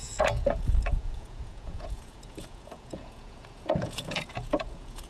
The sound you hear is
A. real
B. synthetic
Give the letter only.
B